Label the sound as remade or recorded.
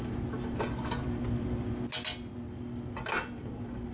recorded